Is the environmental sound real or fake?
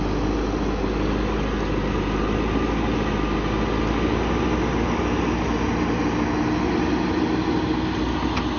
real